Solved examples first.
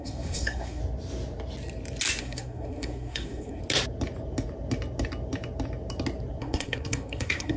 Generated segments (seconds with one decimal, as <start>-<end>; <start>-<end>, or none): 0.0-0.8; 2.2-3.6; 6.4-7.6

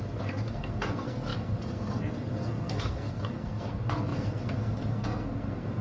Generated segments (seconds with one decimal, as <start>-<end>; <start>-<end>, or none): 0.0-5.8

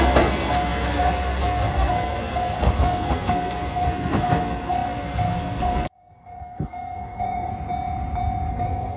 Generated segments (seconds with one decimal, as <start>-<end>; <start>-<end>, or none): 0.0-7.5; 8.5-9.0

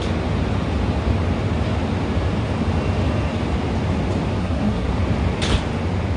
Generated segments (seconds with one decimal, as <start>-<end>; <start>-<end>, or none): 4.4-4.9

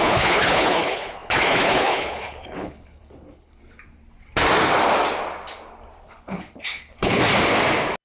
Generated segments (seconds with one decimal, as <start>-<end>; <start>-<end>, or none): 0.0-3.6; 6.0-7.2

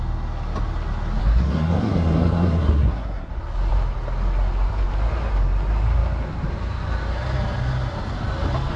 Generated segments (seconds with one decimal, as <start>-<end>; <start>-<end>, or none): 1.2-3.3

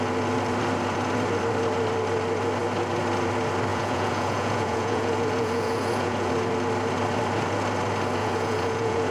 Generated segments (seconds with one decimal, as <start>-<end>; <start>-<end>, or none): 3.7-6.3; 8.2-9.1